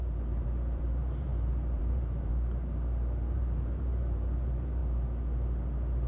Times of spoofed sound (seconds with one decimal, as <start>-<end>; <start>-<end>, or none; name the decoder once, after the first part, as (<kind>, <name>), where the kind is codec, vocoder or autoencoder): 0.0-2.3 (vocoder, BigVGAN v2); 3.3-4.8